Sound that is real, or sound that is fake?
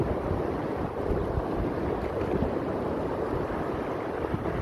real